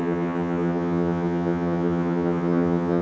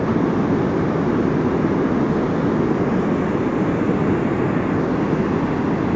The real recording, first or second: second